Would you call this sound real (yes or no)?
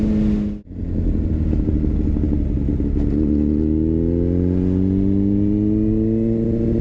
yes